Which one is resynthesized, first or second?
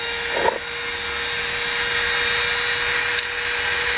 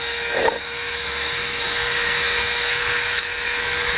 second